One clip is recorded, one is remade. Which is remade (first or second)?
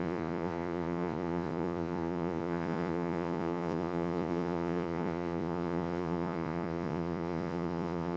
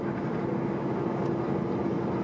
first